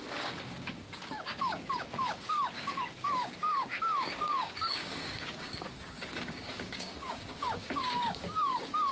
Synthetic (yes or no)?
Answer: yes